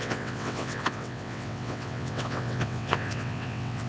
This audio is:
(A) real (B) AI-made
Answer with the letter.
B